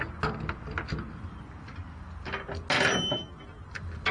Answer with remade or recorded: recorded